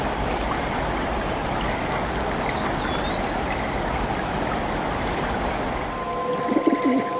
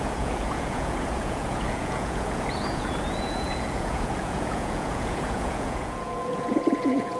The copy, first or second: second